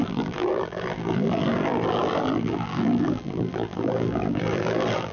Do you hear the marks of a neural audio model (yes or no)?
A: yes